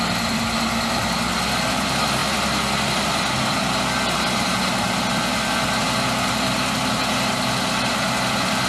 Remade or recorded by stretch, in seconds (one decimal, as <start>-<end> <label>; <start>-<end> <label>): 0.0-8.7 recorded